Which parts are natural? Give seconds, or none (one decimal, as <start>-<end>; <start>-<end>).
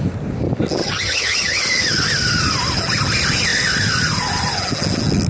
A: 0.0-0.8; 1.6-5.3